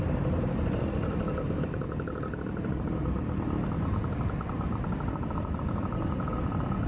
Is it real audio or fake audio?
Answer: real